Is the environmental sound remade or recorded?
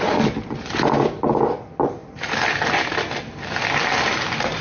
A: recorded